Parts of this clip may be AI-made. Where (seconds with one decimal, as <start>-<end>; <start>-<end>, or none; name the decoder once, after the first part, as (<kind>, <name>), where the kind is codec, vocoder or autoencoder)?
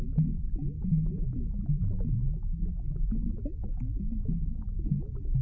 none